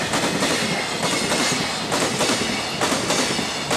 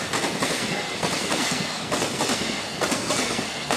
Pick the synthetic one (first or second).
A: second